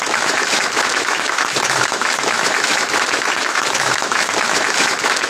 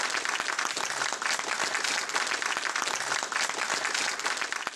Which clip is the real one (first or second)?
second